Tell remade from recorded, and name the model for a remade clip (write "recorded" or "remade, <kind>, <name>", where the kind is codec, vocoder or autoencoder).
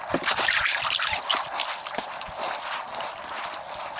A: recorded